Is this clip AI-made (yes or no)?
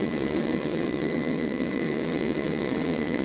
yes